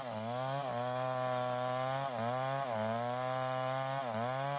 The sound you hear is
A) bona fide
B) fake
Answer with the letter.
A